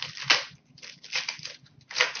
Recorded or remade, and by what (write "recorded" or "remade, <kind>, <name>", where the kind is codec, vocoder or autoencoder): recorded